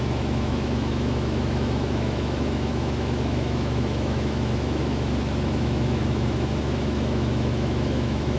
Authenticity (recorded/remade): remade